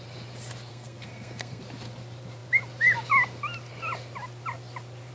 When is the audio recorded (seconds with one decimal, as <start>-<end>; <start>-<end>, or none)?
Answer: 0.0-0.7; 1.6-5.1